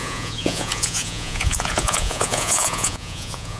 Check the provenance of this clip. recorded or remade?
remade